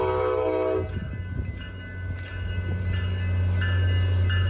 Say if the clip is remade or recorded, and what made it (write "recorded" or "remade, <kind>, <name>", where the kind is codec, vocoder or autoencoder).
recorded